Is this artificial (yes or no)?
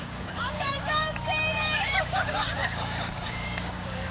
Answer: yes